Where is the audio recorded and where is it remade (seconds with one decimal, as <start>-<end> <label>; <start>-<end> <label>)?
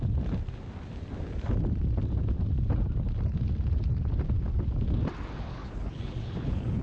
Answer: 0.0-5.5 recorded; 5.5-6.8 remade